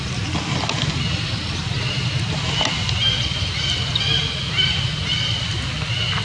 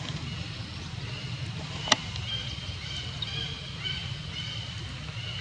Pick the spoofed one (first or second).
second